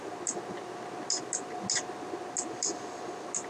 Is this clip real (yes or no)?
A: yes